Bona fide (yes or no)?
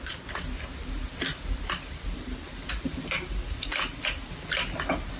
yes